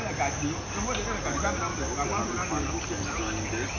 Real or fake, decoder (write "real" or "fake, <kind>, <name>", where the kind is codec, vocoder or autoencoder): real